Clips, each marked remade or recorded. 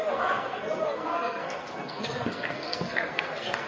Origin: remade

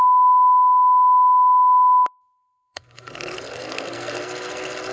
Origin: remade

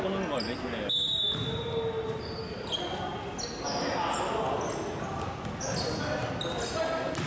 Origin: recorded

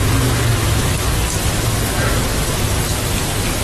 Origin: recorded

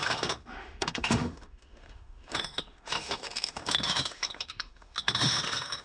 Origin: remade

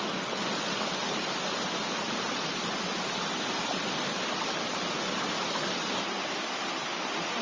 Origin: recorded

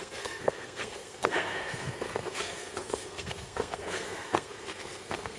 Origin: remade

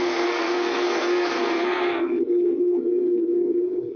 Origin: remade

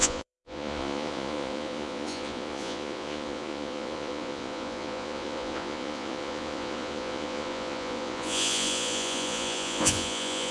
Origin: remade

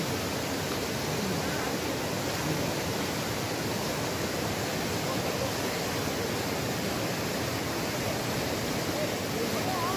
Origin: recorded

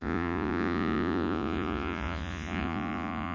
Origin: remade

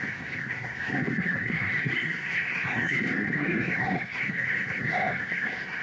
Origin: remade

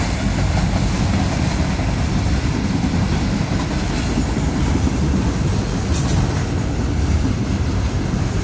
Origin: recorded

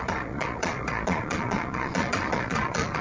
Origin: remade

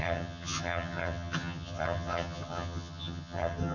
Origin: remade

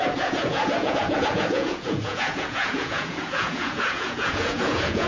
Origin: remade